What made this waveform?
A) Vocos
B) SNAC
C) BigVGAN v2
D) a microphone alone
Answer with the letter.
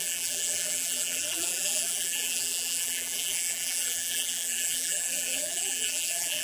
C